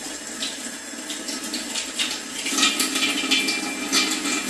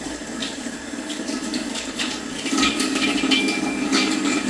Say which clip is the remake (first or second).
second